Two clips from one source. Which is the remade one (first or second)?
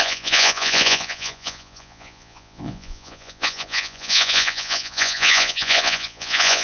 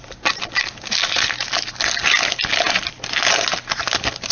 first